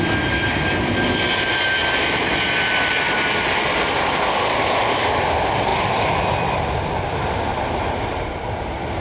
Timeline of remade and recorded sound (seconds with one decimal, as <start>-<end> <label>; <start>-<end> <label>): 0.0-9.0 recorded